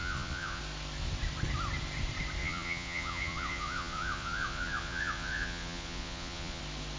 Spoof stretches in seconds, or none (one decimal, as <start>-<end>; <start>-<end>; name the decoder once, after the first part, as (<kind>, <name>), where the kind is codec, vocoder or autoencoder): 0.0-0.6 (vocoder, Vocos); 2.4-6.6